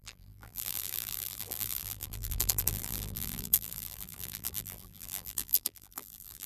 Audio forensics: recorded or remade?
remade